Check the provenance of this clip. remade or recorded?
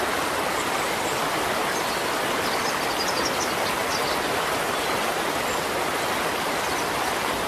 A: recorded